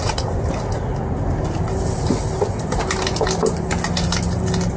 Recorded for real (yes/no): yes